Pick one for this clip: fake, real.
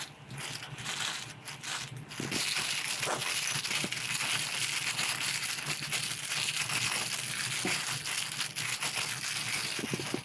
real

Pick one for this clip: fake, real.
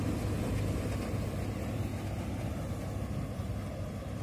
real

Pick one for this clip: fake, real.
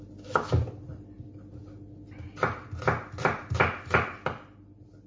real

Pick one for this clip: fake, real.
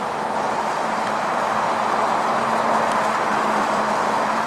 real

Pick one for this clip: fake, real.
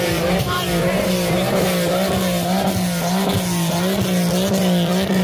real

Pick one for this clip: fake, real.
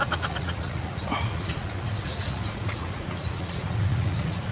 fake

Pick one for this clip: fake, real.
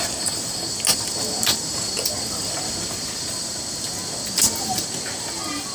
real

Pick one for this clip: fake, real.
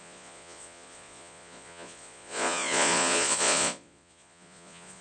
fake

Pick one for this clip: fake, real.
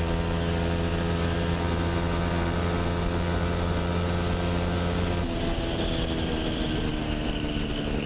real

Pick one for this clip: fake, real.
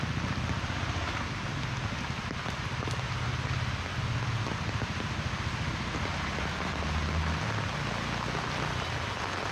real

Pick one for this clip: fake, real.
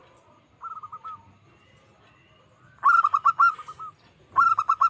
real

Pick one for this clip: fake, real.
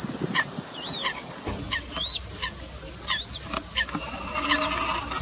real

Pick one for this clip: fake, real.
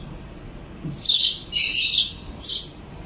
real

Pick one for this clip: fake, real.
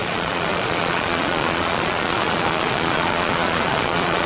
fake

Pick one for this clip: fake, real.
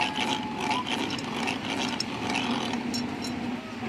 real